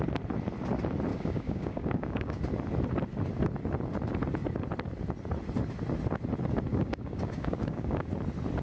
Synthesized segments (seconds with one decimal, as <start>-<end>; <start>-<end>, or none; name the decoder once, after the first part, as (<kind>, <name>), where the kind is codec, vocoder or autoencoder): 1.1-2.4 (codec, DAC); 6.7-8.1